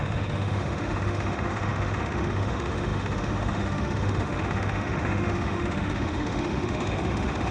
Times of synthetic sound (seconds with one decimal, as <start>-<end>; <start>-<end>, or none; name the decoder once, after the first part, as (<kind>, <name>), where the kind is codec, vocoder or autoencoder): 0.0-7.5 (autoencoder, DAC-VAE)